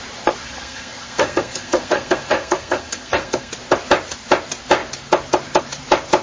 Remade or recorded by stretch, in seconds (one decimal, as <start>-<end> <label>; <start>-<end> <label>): 0.0-0.4 recorded; 0.4-3.5 remade; 3.5-6.2 recorded

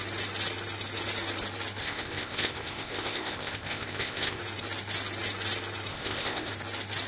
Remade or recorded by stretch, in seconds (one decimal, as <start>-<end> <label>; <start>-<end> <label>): 0.0-1.8 recorded; 1.8-4.4 remade; 4.4-5.9 recorded; 5.9-6.5 remade; 6.5-7.1 recorded

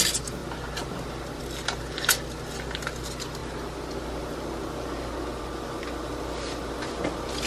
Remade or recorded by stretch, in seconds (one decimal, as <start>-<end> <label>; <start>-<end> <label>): 0.0-7.5 recorded